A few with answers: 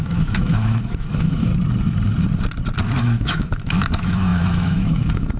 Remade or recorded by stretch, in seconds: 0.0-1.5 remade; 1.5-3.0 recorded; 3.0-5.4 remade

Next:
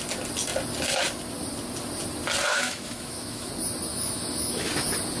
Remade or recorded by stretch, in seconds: 0.0-2.5 recorded; 2.5-3.5 remade; 3.5-3.9 recorded; 3.9-4.7 remade; 4.7-5.2 recorded

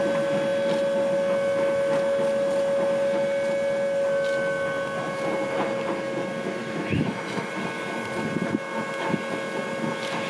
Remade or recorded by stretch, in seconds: 0.0-6.6 recorded; 6.6-7.5 remade; 7.5-10.3 recorded